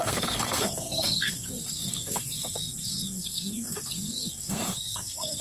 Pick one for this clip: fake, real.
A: fake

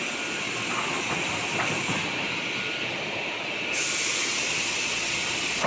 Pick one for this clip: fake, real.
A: real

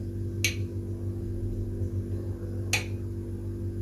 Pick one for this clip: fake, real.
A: real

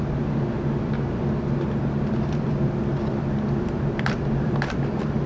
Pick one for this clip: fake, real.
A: fake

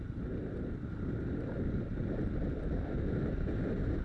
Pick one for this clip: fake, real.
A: real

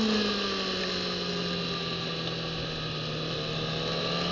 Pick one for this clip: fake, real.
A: real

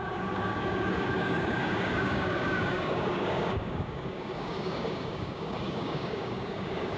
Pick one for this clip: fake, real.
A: fake